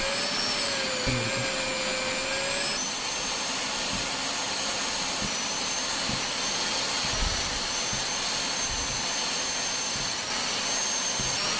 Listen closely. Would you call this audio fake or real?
real